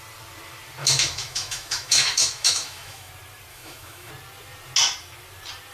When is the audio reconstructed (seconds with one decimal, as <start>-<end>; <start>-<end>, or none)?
0.8-3.1; 3.5-4.1